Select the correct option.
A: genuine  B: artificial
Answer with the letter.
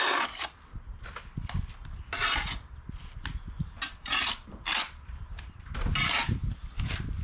A